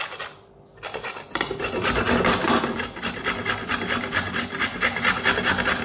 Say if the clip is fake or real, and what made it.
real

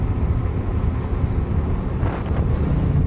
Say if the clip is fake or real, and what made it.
real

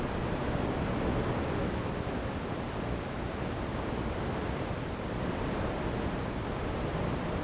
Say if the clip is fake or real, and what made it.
real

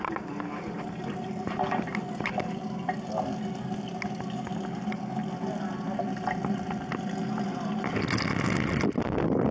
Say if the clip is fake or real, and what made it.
real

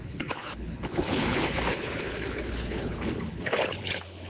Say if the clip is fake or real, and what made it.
fake, codec, HILCodec